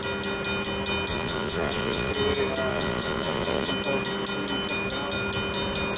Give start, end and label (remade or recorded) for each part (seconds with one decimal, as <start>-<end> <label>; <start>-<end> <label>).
0.0-1.1 recorded; 1.1-2.1 remade; 2.1-2.7 recorded; 2.7-3.7 remade; 3.7-6.0 recorded

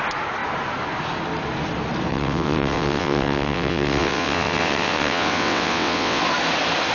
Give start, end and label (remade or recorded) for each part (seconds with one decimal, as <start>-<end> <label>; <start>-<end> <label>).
0.0-2.1 recorded; 2.1-6.2 remade; 6.2-6.9 recorded

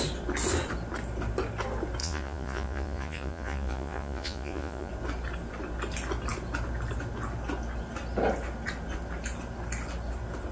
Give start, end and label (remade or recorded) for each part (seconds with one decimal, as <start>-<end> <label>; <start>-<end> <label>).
0.0-2.0 recorded; 2.0-4.9 remade; 4.9-10.5 recorded

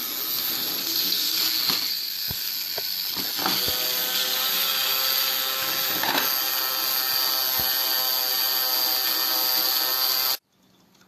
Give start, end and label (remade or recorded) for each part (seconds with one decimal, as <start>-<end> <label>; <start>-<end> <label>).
0.0-0.8 recorded; 0.8-1.4 remade; 1.4-1.9 recorded; 1.9-2.5 remade; 2.5-11.1 recorded

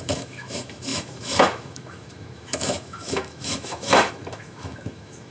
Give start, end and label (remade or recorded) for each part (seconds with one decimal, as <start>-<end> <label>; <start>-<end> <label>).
0.0-5.3 remade

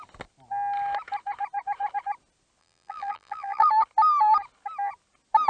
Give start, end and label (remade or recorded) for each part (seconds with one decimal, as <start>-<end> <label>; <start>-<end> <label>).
0.0-2.6 recorded; 2.6-3.7 remade; 3.7-5.5 recorded

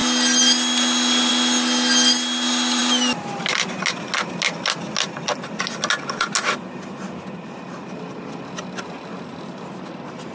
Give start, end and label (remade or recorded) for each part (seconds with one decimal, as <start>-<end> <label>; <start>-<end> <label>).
0.0-10.3 recorded